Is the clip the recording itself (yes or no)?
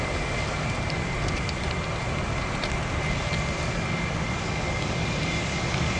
yes